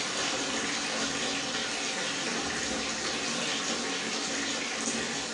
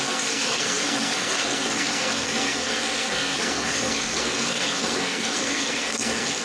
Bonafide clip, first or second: first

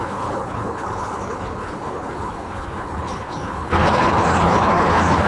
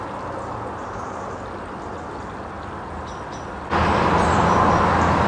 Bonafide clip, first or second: second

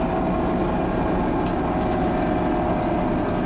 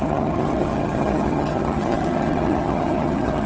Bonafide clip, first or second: first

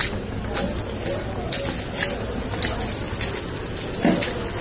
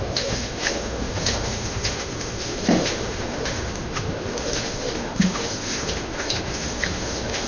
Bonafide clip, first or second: first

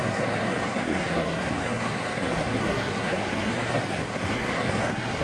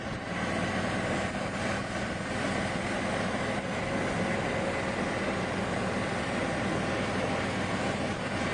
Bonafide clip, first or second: second